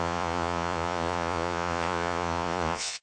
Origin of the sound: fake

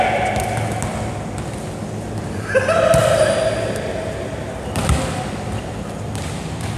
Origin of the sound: real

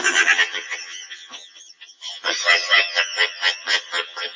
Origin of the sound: fake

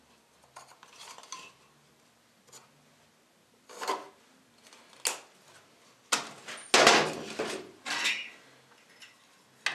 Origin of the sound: real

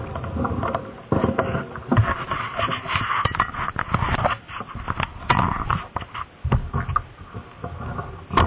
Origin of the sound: real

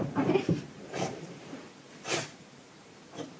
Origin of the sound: fake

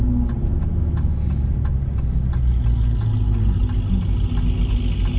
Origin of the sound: real